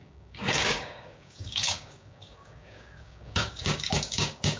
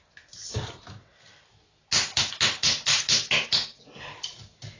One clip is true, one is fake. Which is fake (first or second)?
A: first